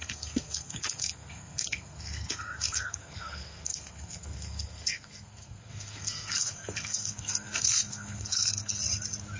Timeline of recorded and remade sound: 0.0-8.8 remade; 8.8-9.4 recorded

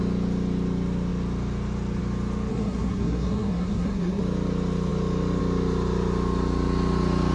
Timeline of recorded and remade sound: 0.0-2.5 recorded; 2.5-4.2 remade; 4.2-7.3 recorded

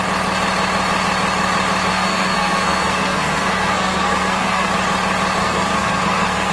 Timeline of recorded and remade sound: 0.0-1.9 recorded; 1.9-4.7 remade; 4.7-5.4 recorded; 5.4-6.5 remade

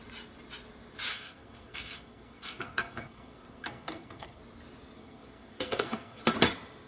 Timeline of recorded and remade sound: 0.0-1.1 recorded; 1.1-4.4 remade; 4.4-5.0 recorded; 5.0-6.2 remade; 6.2-6.9 recorded

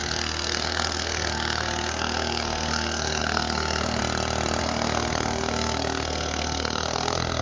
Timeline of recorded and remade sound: 0.0-4.0 remade; 4.0-4.6 recorded; 4.6-7.4 remade

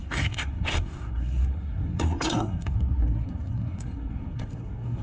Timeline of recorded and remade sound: 0.0-5.0 remade

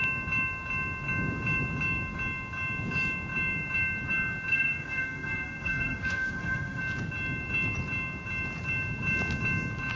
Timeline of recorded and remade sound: 0.0-4.5 recorded; 4.5-6.8 remade; 6.8-10.0 recorded